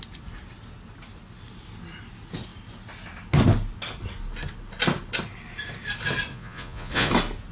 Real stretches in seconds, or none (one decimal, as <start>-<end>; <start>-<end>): 0.0-6.3; 7.1-7.5